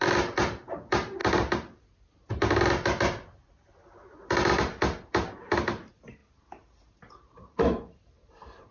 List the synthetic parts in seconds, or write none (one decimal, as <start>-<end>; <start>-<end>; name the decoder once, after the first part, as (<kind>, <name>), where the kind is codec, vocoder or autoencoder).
6.2-8.7 (vocoder, BigVGAN v2)